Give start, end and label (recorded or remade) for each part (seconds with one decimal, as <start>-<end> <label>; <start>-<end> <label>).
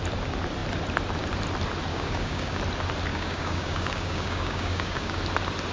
0.0-1.9 recorded; 1.9-2.6 remade; 2.6-3.1 recorded; 3.1-5.2 remade; 5.2-5.7 recorded